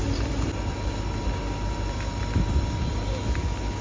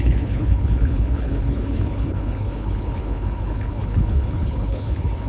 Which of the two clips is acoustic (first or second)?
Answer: first